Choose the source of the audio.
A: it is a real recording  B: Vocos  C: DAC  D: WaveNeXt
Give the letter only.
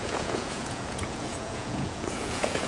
B